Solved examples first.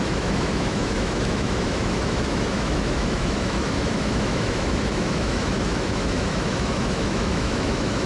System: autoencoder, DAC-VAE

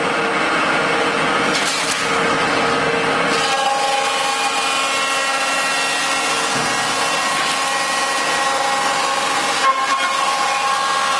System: none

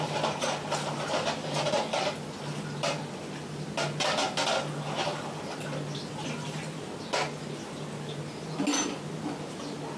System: none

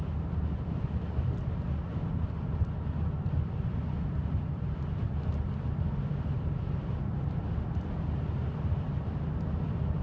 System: none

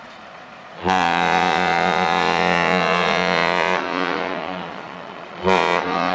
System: vocoder, Vocos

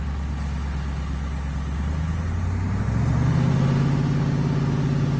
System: none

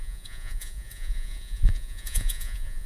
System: vocoder, Vocos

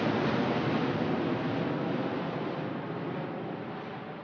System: none